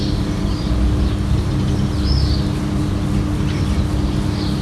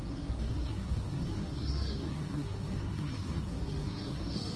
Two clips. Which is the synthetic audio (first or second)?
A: second